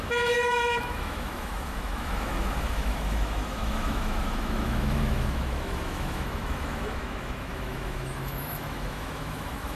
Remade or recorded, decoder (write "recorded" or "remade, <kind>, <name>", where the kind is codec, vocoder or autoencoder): remade, autoencoder, DAC-VAE